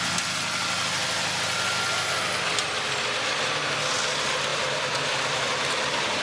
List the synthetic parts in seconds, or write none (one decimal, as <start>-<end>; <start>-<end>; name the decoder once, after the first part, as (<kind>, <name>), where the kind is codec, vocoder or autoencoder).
4.5-6.2 (vocoder, BigVGAN v2)